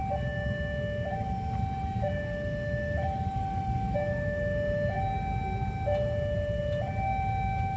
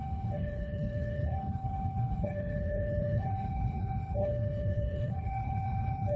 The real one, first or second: first